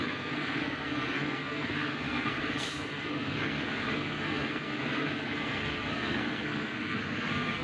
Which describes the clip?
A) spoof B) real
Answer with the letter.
A